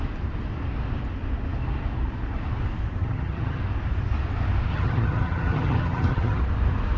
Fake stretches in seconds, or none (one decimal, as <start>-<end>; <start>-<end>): 3.0-3.6; 4.7-6.4